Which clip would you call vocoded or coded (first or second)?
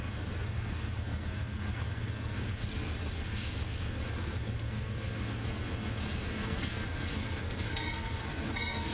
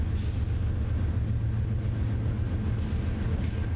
first